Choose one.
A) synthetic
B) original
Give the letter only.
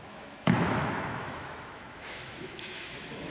A